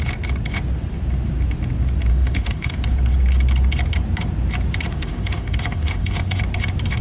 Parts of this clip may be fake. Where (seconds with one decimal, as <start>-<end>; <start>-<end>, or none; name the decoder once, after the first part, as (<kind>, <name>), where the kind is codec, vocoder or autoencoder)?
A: 2.1-2.7 (autoencoder, DAC-VAE); 4.9-6.4